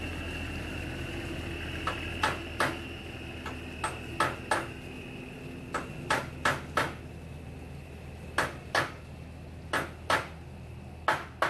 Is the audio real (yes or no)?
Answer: yes